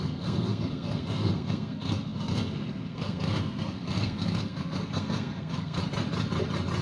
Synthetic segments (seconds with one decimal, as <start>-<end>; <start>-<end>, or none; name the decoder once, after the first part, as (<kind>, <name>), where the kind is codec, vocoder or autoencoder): 0.0-5.8 (codec, SNAC)